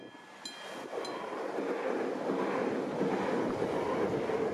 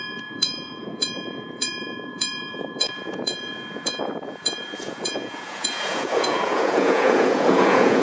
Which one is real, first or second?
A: first